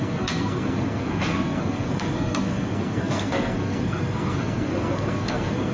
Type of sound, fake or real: fake